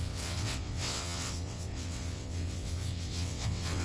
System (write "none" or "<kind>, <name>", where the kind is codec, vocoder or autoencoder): vocoder, WaveNeXt